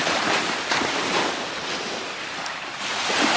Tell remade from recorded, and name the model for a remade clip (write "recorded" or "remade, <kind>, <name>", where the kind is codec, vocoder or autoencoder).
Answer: recorded